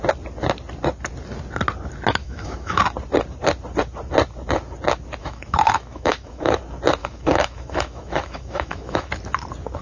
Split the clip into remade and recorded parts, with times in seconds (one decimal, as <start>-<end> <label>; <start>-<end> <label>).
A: 0.0-2.2 recorded; 2.2-2.8 remade; 2.8-5.2 recorded; 5.2-6.6 remade; 6.6-7.0 recorded; 7.0-9.1 remade; 9.1-9.8 recorded